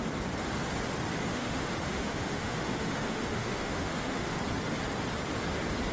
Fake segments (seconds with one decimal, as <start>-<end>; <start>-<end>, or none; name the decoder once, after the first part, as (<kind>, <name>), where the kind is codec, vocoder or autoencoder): 1.3-4.4 (autoencoder, DAC-VAE)